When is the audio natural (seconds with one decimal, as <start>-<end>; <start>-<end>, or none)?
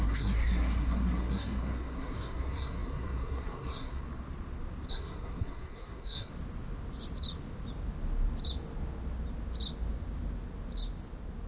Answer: 4.0-4.9; 6.3-11.5